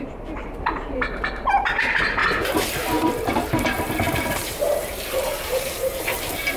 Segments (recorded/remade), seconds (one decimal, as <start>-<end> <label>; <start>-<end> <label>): 0.0-2.2 remade; 2.2-2.8 recorded; 2.8-6.6 remade